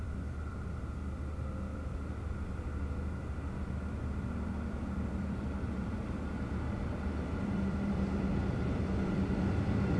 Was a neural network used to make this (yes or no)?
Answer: yes